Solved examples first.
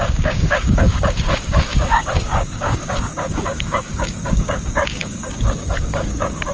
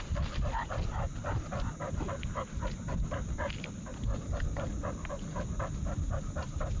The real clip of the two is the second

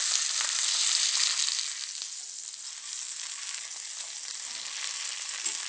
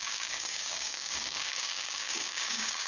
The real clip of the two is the first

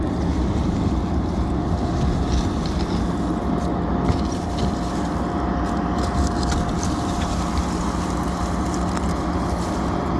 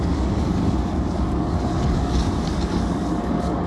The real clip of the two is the first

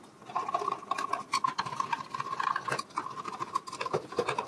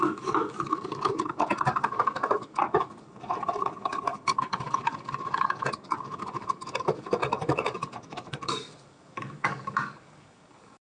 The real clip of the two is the first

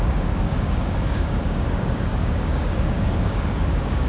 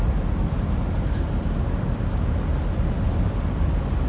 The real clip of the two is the second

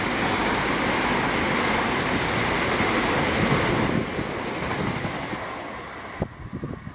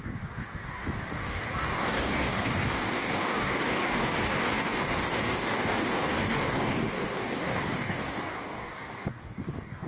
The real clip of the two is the first